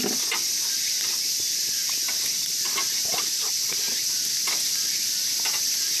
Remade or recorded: recorded